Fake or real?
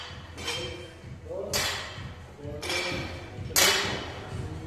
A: real